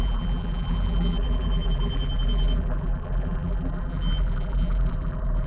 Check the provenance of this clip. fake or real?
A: fake